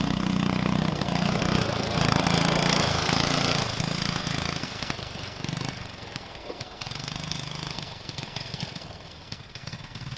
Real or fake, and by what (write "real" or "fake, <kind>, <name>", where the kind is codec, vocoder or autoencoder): fake, codec, SNAC